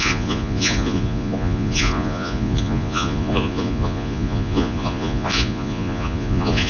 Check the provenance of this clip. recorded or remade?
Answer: remade